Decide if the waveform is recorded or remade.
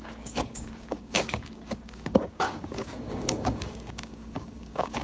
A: remade